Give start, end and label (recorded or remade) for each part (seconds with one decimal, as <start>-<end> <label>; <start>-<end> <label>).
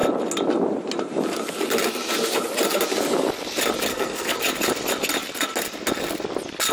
0.0-3.9 recorded; 3.9-4.4 remade; 4.4-6.7 recorded